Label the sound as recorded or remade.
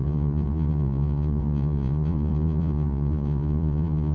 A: remade